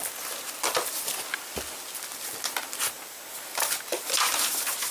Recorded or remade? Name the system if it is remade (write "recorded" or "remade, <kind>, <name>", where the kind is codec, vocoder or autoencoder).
recorded